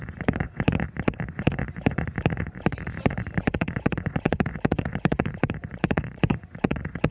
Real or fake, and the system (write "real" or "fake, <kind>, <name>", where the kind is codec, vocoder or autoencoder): fake, vocoder, Vocos